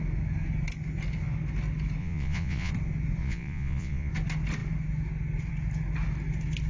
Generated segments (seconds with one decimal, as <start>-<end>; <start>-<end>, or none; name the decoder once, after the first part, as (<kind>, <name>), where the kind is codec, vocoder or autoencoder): 2.0-2.7 (vocoder, Vocos); 3.2-4.1

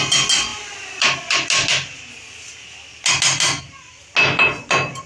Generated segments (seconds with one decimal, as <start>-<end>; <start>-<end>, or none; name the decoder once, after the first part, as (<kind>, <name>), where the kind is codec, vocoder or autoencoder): none